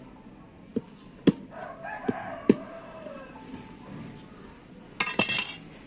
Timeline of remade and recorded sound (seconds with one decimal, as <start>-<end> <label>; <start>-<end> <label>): 0.0-5.9 recorded